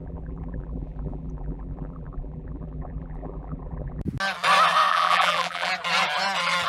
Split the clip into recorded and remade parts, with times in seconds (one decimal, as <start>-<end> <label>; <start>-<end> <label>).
0.0-4.0 remade; 4.0-4.9 recorded; 4.9-5.7 remade; 5.7-6.7 recorded